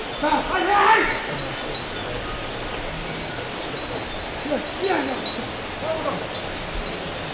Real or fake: real